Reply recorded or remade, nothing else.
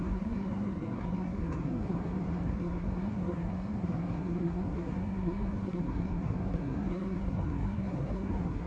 remade